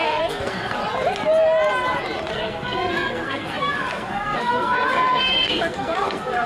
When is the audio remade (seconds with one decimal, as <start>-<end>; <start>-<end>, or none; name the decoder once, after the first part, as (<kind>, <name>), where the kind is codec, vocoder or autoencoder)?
0.0-0.8 (codec, SNAC); 2.3-6.5